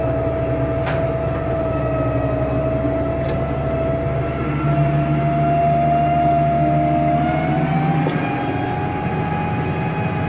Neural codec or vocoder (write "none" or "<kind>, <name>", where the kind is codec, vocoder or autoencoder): none